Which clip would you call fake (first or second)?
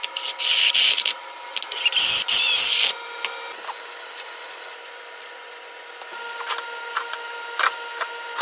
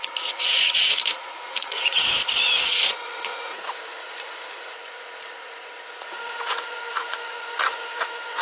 second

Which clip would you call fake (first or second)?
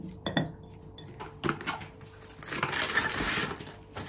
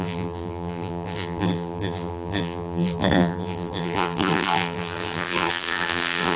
second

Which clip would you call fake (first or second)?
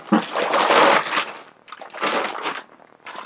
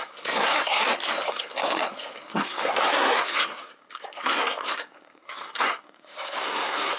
second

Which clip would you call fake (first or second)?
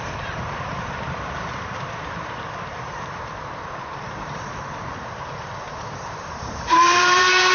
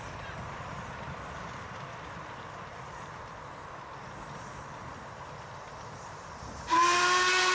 first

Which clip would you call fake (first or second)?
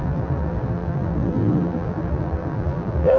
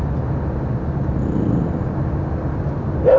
first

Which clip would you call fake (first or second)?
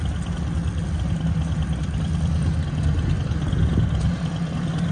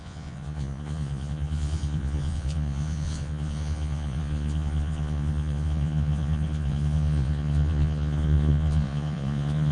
second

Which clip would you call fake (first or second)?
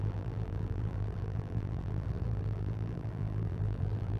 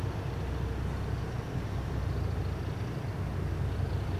first